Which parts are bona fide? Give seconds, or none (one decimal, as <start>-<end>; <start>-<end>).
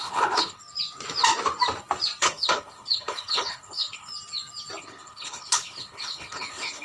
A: 0.6-2.2; 4.1-4.8